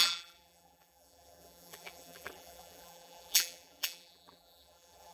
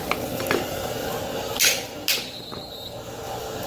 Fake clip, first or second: first